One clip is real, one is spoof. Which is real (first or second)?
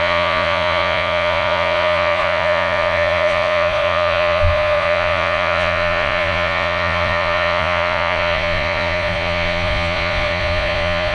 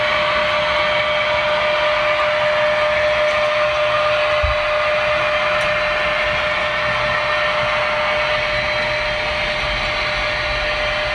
second